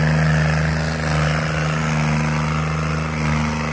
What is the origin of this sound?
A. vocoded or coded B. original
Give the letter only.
B